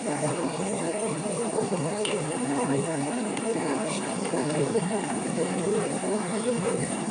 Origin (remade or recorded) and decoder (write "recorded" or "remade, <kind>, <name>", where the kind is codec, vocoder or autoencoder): remade, codec, SNAC